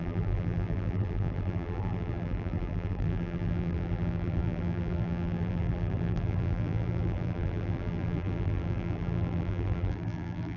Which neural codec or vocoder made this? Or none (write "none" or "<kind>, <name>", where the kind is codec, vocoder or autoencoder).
vocoder, BigVGAN v2